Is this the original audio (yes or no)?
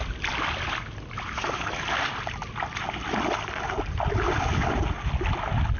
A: yes